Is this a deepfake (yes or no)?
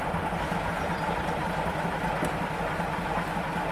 no